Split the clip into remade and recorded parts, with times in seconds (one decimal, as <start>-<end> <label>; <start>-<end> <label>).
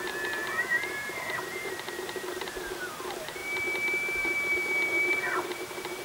0.0-0.4 recorded; 0.4-2.9 remade; 2.9-6.0 recorded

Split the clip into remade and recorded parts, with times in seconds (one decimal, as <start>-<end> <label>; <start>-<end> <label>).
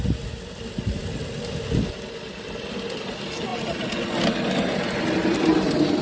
0.0-6.0 recorded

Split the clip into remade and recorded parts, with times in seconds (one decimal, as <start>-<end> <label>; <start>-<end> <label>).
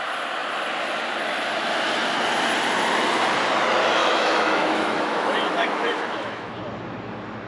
0.0-4.0 recorded; 4.0-6.6 remade; 6.6-7.5 recorded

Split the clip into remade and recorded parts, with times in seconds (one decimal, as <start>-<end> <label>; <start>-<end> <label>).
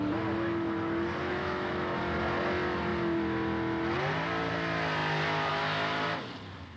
0.0-1.2 recorded; 1.2-2.0 remade; 2.0-6.8 recorded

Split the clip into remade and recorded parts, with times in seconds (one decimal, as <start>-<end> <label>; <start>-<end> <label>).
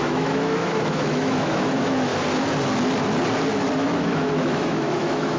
0.0-2.1 remade; 2.1-3.7 recorded; 3.7-5.4 remade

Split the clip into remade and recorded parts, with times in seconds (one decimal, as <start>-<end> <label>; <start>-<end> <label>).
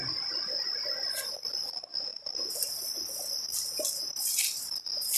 0.0-5.2 recorded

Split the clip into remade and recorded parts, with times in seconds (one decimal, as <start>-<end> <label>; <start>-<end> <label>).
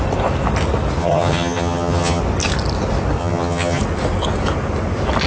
0.0-1.0 recorded; 1.0-2.2 remade; 2.2-3.2 recorded; 3.2-3.8 remade; 3.8-5.3 recorded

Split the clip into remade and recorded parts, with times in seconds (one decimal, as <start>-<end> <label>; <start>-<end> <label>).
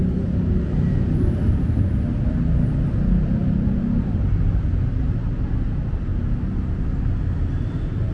0.0-8.1 recorded